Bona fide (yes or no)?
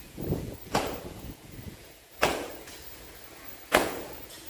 no